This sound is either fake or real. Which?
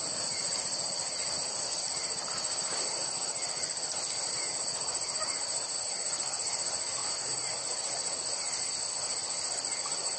real